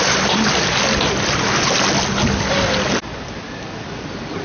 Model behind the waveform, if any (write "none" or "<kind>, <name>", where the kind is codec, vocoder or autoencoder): none